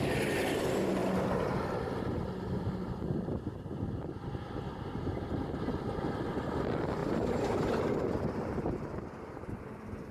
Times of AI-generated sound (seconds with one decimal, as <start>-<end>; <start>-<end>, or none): 7.0-7.7